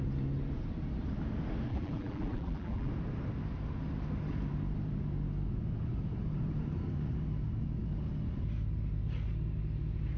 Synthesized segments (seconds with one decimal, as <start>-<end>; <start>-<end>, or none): 1.7-2.9